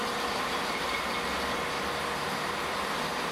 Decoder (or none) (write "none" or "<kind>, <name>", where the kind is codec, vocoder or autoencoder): none